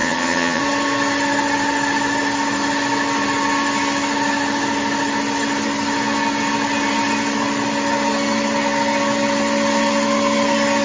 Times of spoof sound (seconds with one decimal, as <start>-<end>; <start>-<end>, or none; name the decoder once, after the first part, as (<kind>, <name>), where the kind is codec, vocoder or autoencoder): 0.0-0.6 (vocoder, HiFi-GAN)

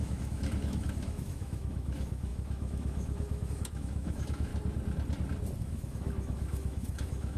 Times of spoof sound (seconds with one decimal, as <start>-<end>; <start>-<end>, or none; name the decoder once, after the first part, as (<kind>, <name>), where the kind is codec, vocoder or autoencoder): 0.0-4.5 (autoencoder, DAC-VAE); 5.6-7.4

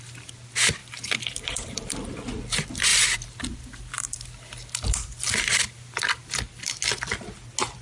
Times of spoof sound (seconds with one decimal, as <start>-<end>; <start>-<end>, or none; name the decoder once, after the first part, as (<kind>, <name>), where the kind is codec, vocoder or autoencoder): 0.8-1.9 (vocoder, BigVGAN v2); 2.9-6.8

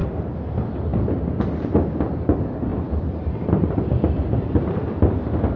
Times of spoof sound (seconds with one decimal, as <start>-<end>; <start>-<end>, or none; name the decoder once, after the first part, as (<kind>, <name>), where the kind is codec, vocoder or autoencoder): 0.9-1.5 (vocoder, BigVGAN v2); 2.7-4.1

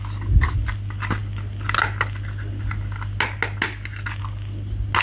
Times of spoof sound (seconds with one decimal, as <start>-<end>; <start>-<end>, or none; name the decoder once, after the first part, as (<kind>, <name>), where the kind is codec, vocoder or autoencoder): none

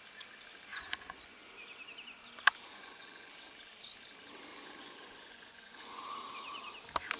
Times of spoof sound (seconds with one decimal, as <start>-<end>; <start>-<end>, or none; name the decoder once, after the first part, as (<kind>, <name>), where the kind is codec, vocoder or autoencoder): 0.7-1.4 (vocoder, Vocos); 2.7-3.3; 4.5-6.0

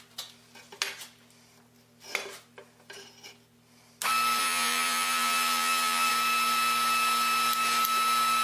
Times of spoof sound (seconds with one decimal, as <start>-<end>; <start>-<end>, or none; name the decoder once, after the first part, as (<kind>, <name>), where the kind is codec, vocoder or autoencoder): 4.4-6.1 (vocoder, BigVGAN v2)

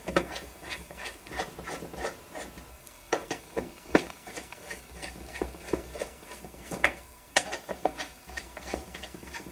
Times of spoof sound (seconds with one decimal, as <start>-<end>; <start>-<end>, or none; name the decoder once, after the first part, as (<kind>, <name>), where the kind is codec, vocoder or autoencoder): 0.0-1.3 (codec, SNAC); 2.7-9.5